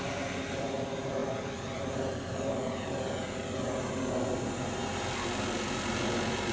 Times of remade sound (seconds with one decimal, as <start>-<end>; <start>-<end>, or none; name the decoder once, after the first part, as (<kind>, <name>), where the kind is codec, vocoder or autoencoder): none